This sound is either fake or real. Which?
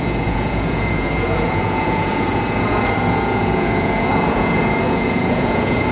fake